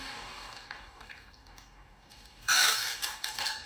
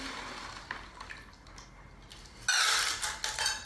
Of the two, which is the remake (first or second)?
first